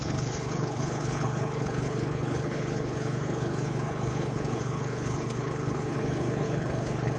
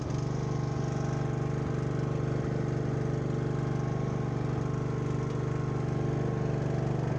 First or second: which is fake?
first